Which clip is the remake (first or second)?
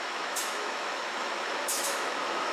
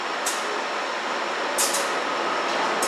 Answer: first